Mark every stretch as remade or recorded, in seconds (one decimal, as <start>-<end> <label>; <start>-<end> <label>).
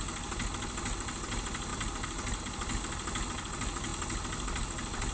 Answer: 0.0-5.1 recorded